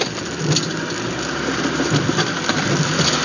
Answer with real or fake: real